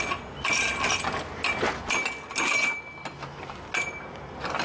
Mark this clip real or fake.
real